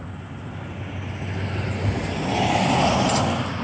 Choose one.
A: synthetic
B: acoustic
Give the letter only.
B